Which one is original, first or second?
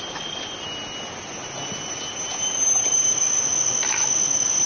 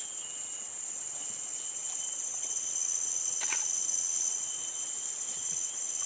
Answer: first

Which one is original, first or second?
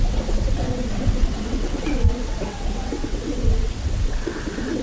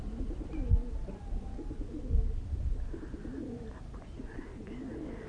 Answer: second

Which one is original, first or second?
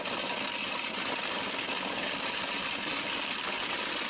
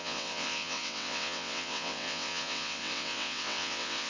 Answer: first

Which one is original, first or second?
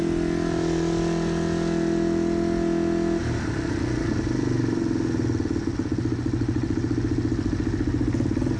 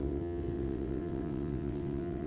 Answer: first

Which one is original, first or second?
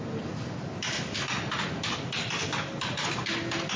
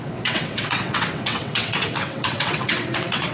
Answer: first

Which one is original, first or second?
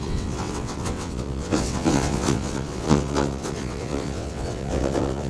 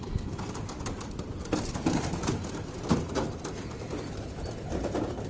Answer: second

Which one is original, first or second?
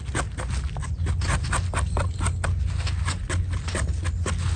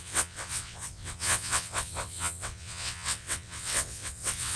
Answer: first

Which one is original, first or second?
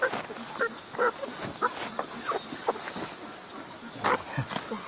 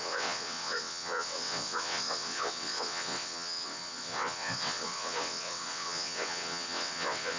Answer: first